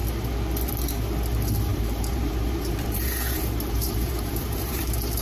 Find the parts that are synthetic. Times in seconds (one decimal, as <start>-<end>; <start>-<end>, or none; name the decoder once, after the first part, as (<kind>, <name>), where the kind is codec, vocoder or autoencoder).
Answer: 1.7-4.8 (vocoder, BigVGAN v2)